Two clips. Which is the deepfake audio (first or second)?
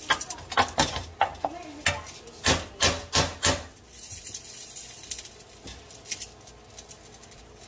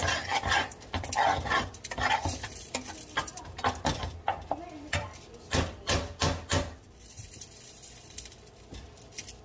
second